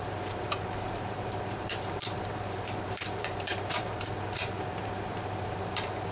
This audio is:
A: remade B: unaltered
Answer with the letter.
A